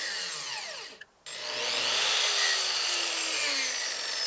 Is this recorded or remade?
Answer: recorded